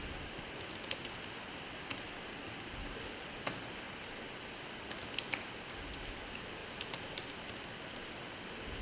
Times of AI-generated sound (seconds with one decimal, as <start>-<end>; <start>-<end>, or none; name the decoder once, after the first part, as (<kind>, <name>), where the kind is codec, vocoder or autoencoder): none